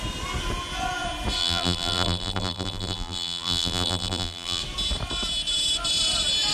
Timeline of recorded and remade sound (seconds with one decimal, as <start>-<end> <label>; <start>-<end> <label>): 0.0-1.4 recorded; 1.4-4.6 remade; 4.6-6.5 recorded